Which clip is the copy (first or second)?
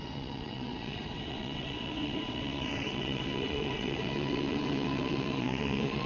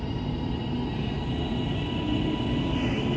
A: first